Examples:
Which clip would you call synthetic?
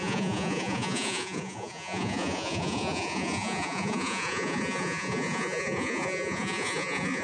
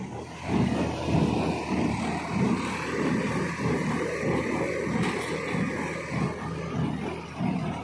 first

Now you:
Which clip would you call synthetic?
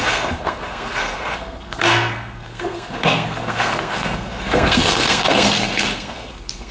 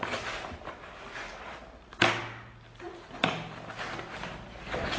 first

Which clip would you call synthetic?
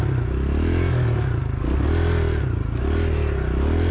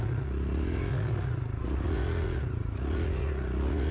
second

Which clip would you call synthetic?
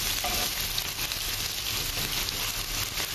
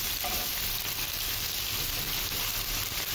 second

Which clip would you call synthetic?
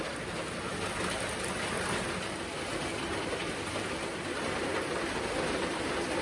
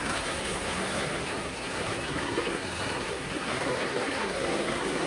second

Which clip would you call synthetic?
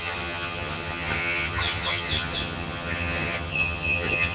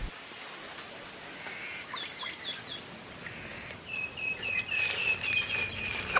first